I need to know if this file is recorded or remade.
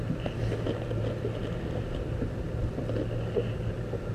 recorded